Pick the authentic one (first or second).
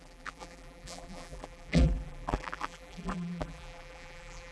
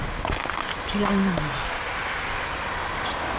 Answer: second